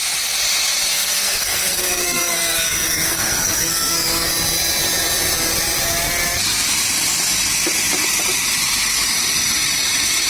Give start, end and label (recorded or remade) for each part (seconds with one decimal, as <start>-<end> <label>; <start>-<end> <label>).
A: 0.0-0.9 recorded; 0.9-4.3 remade; 4.3-10.3 recorded